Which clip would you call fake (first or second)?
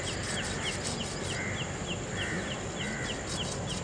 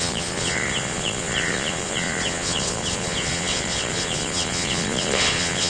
second